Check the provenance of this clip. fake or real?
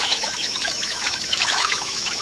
fake